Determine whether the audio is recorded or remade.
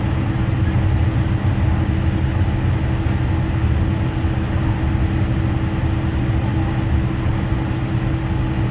recorded